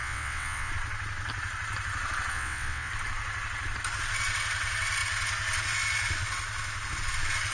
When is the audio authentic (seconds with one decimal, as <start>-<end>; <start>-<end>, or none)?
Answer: 0.7-2.3; 2.9-7.5